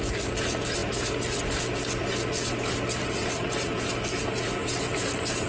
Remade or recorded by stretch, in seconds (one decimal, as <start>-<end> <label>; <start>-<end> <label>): 0.0-3.2 recorded; 3.2-3.8 remade; 3.8-4.6 recorded; 4.6-5.5 remade